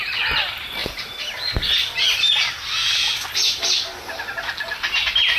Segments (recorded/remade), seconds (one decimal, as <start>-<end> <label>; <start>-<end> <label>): 0.0-5.4 recorded